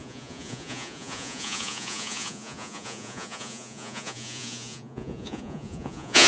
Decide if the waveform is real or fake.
fake